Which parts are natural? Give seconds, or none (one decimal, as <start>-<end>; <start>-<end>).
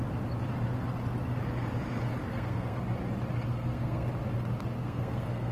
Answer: 0.0-2.3; 2.8-3.5; 4.1-4.8